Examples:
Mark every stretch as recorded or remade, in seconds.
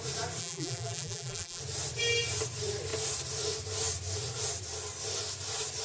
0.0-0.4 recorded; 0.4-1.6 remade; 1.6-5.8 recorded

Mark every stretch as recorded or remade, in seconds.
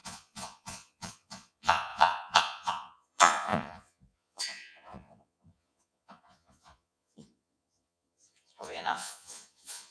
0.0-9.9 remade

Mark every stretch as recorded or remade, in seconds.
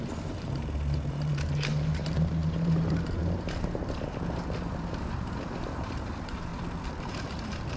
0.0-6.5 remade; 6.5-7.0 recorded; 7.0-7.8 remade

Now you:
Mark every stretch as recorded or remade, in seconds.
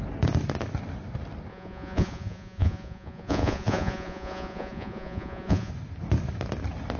0.0-1.5 recorded; 1.5-5.7 remade; 5.7-7.0 recorded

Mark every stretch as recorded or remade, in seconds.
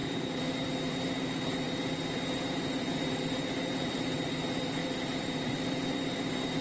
0.0-6.6 remade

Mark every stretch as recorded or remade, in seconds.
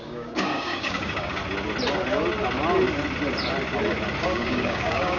0.0-1.4 remade; 1.4-4.2 recorded; 4.2-5.2 remade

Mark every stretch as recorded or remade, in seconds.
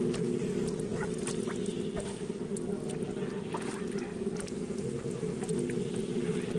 0.0-6.6 recorded